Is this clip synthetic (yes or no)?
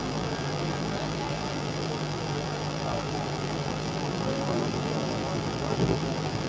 yes